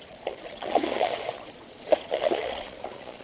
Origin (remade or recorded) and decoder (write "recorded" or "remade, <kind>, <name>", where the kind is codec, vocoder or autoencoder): remade, vocoder, Vocos